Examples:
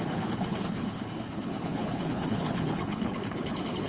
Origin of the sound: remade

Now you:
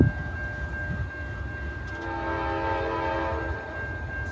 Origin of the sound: recorded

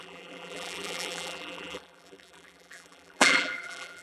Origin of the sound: remade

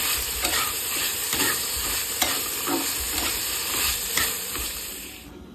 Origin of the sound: remade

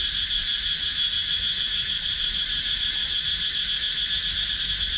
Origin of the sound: recorded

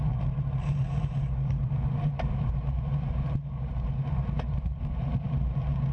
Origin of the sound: remade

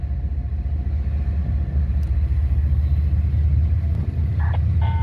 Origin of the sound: recorded